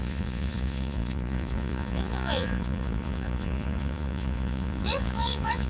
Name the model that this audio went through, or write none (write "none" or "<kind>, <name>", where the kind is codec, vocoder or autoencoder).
vocoder, Vocos